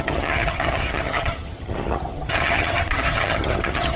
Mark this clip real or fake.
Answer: fake